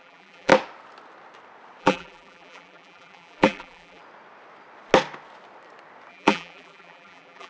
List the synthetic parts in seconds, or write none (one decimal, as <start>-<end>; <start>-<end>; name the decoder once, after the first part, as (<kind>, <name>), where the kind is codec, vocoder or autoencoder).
0.0-0.5 (vocoder, BigVGAN v2); 1.8-4.0; 6.1-7.5